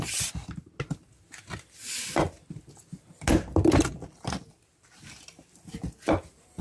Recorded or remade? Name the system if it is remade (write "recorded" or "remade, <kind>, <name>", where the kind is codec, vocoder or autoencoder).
recorded